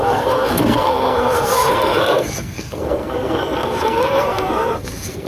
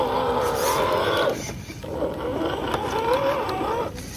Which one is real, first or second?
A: second